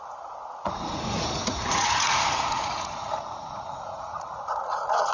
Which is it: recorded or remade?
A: remade